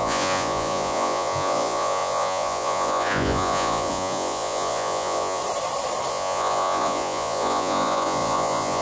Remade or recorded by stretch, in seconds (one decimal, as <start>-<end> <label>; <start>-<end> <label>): 0.0-5.4 remade; 5.4-6.1 recorded; 6.1-8.8 remade